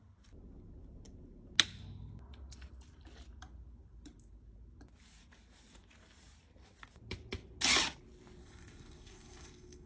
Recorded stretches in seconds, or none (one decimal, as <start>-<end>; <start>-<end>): 0.0-8.4